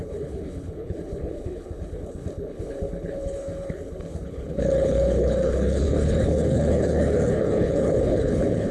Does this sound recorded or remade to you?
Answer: remade